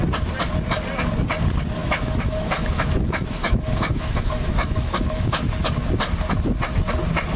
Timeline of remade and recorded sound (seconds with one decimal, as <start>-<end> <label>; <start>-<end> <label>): 0.0-1.8 recorded; 1.8-5.4 remade; 5.4-7.4 recorded